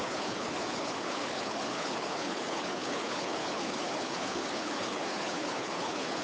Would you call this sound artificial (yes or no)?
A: yes